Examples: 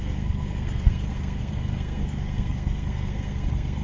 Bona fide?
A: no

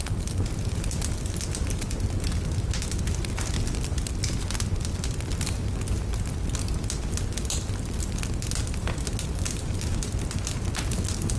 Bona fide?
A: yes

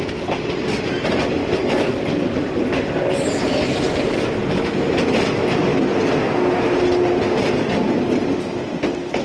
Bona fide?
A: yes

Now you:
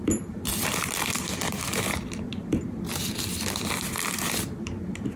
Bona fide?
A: no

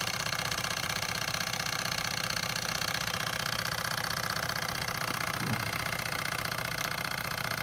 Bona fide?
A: yes